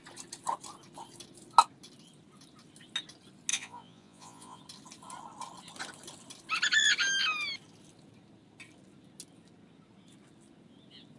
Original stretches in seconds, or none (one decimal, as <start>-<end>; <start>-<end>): 0.0-3.5; 4.6-11.2